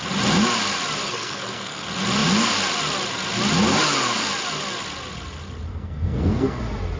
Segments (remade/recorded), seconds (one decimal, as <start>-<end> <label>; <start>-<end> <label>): 0.0-1.0 recorded; 1.0-1.8 remade; 1.8-5.7 recorded; 5.7-6.6 remade; 6.6-7.0 recorded